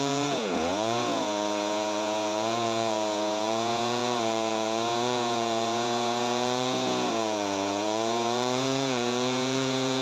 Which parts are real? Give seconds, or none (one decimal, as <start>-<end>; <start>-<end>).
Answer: none